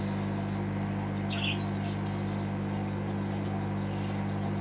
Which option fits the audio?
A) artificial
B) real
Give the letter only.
B